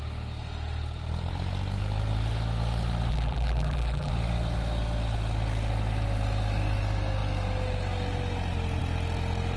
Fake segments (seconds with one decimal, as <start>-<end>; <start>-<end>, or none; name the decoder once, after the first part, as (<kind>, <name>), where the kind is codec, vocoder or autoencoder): 3.1-4.1 (vocoder, BigVGAN v2)